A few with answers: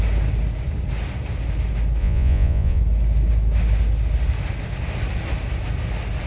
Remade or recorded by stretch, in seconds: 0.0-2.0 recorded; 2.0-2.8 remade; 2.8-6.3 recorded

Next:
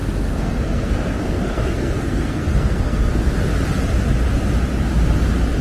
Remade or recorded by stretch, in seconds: 0.0-3.4 remade; 3.4-5.6 recorded

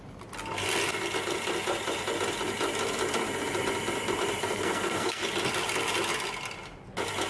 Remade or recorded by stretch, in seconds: 0.0-4.4 recorded; 4.4-5.2 remade; 5.2-7.3 recorded

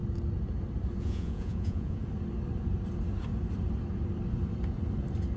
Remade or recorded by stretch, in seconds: 0.0-1.0 recorded; 1.0-2.0 remade; 2.0-5.4 recorded